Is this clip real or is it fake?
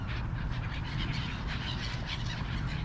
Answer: real